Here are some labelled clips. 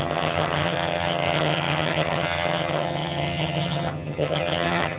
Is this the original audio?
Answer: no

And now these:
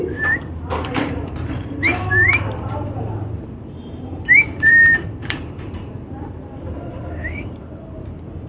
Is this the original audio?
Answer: no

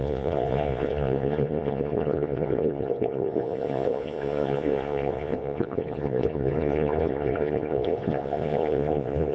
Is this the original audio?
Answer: no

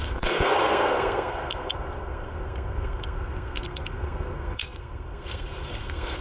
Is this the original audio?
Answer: no